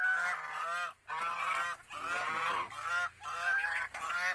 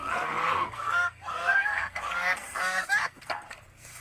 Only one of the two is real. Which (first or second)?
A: first